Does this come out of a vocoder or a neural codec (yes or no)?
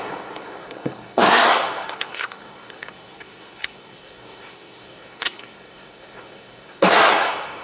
yes